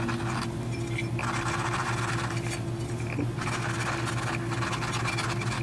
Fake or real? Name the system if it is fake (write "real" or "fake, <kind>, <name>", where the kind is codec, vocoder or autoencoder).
real